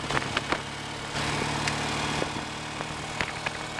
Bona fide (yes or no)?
yes